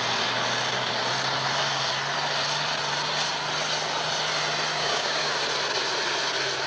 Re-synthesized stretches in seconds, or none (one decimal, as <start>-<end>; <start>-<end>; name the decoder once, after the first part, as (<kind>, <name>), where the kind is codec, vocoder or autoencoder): 4.7-5.3 (codec, DAC)